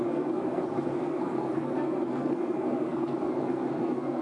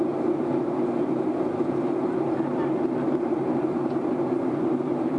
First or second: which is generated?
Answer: first